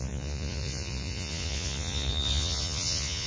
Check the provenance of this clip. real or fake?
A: fake